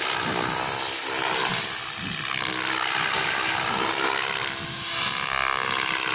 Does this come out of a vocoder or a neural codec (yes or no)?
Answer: no